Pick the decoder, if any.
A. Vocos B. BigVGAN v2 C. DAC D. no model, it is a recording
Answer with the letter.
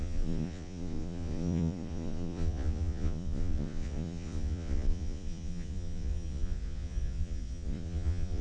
A